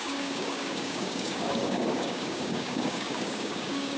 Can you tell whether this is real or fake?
fake